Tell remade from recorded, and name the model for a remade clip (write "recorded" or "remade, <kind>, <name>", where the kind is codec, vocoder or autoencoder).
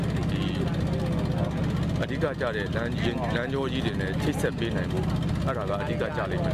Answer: recorded